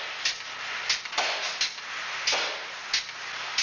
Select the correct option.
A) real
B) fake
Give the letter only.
A